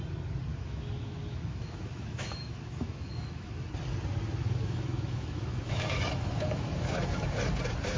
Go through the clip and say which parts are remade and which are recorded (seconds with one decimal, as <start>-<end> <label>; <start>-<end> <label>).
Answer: 0.0-0.5 recorded; 0.5-3.7 remade; 3.7-4.4 recorded; 4.4-7.3 remade; 7.3-8.0 recorded